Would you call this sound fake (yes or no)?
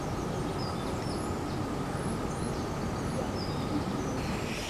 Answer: no